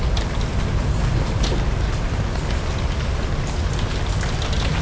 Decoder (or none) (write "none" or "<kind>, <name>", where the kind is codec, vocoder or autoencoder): none